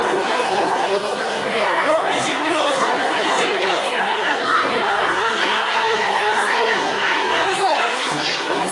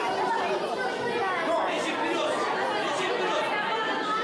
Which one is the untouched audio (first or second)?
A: second